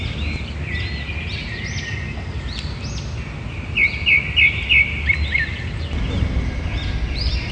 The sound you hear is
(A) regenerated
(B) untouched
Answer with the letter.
B